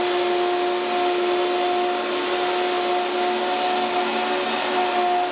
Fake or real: real